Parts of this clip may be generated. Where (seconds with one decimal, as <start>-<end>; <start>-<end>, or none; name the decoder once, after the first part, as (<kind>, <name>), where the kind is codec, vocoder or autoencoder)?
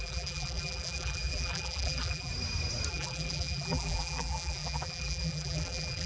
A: 0.0-2.3 (vocoder, BigVGAN v2); 2.9-6.1